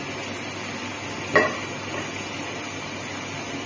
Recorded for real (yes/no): yes